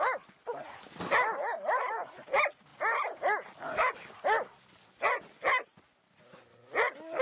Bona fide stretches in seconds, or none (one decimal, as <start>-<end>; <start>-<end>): 0.0-7.2